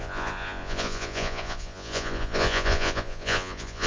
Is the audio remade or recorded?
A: remade